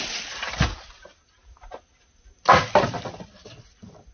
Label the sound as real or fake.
real